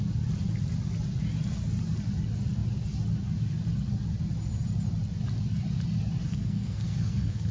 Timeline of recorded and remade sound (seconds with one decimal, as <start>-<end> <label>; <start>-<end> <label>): 0.0-6.3 recorded; 6.3-7.5 remade